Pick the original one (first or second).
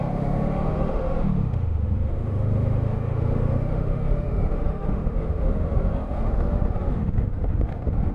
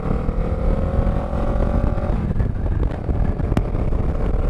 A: second